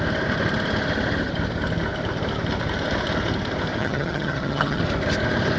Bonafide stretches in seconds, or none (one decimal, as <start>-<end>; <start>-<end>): 0.0-3.8; 4.8-5.6

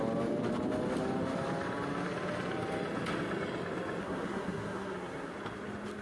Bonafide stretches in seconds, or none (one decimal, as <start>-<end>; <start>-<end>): 0.0-4.0; 5.3-6.0

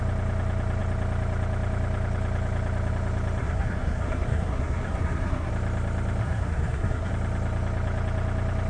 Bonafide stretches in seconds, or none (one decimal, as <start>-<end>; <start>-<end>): 0.0-3.4; 5.5-6.2; 7.1-8.7

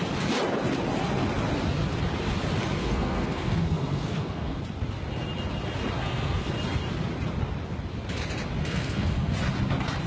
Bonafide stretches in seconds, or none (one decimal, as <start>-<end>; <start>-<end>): 0.0-2.8; 4.6-6.0; 6.5-8.6; 9.3-10.1

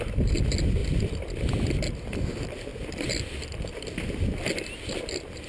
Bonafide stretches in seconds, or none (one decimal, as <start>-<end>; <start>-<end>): 0.0-5.5

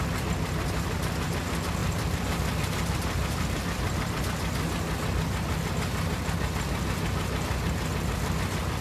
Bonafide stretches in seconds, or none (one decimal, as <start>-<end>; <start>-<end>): 0.0-1.8; 4.2-8.8

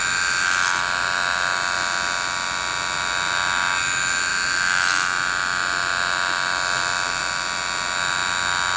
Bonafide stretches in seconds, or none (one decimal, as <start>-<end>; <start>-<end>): 0.0-8.8

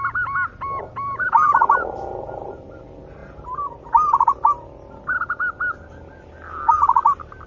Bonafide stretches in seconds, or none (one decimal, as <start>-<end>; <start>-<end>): 0.0-7.5